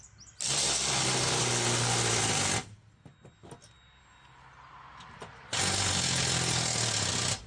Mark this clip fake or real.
real